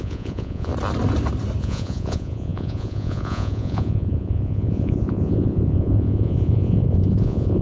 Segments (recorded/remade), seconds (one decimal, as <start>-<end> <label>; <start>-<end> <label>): 0.0-0.7 remade; 0.7-1.6 recorded; 1.6-7.6 remade